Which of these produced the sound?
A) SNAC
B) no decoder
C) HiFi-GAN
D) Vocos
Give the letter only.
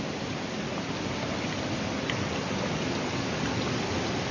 B